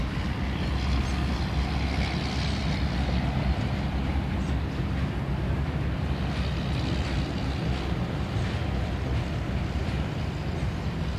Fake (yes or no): no